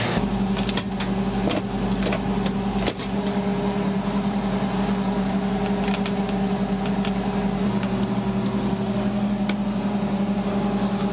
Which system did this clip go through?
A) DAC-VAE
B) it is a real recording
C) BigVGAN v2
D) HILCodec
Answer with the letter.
B